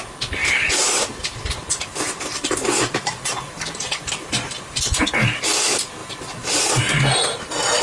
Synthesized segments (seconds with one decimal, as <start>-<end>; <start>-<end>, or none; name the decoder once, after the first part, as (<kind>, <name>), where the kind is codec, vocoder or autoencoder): 0.4-5.1 (vocoder, BigVGAN v2)